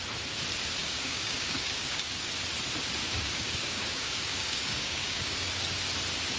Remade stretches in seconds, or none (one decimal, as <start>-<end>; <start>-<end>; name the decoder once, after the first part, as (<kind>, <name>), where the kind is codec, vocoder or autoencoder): 0.8-2.3 (codec, DAC); 3.0-5.5